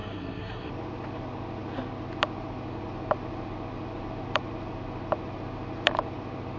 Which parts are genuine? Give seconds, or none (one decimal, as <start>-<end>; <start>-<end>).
0.7-6.6